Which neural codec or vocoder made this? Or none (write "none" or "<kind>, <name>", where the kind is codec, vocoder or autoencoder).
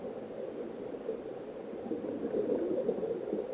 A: none